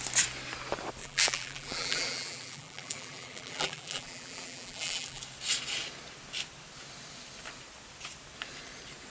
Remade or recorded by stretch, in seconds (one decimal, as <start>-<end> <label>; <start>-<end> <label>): 0.0-1.0 recorded; 1.0-5.2 remade; 5.2-9.1 recorded